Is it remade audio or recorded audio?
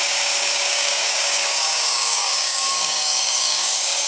remade